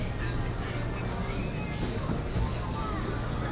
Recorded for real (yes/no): yes